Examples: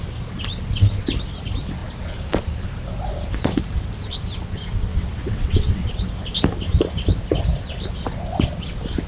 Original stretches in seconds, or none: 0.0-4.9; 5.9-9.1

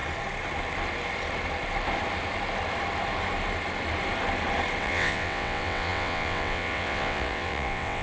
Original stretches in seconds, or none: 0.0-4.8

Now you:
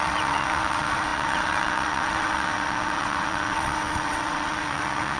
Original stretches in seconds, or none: none

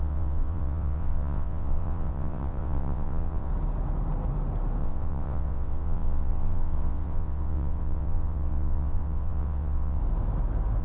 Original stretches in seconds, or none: 3.5-4.8; 10.0-10.8